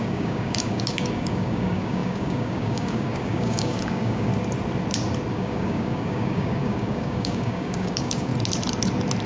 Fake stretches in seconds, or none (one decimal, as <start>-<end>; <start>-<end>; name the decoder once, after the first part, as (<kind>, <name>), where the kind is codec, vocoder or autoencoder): 0.0-4.3 (codec, DAC); 5.3-8.3